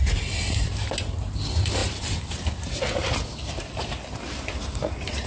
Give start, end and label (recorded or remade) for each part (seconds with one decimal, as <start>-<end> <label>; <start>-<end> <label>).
0.0-5.3 recorded